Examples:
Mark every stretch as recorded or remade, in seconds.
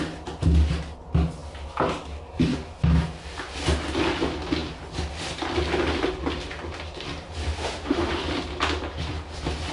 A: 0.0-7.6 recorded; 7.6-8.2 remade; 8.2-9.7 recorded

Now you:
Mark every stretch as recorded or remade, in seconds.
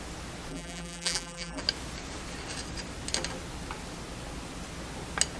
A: 0.0-0.5 recorded; 0.5-1.6 remade; 1.6-5.4 recorded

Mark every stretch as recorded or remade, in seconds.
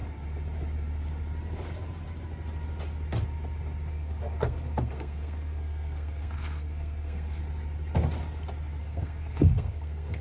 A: 0.0-3.9 recorded; 3.9-7.4 remade; 7.4-8.8 recorded; 8.8-10.2 remade